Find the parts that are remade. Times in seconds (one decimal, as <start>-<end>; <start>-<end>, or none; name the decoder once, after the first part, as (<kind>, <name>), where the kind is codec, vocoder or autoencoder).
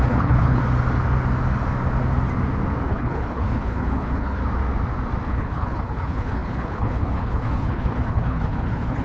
0.0-0.6 (codec, HILCodec); 2.9-4.4; 5.3-9.0